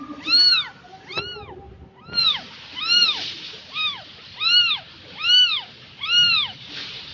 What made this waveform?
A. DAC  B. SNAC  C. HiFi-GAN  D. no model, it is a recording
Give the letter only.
D